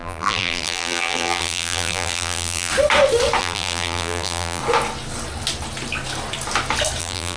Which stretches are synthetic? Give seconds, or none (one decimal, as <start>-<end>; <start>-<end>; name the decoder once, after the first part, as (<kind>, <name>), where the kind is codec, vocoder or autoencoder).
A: 0.0-2.7 (vocoder, BigVGAN v2); 3.4-4.6; 7.0-7.4